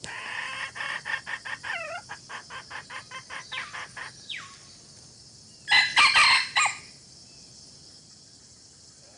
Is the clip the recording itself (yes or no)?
yes